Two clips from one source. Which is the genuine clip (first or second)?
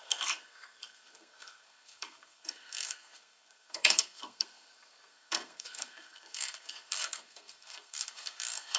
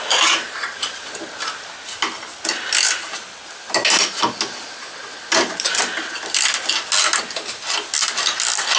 second